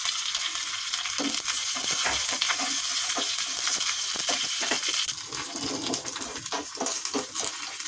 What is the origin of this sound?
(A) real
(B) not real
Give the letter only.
A